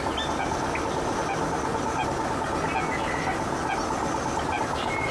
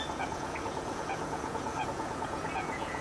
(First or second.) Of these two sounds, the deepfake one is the second